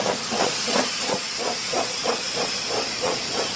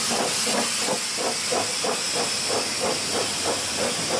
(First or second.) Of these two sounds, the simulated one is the first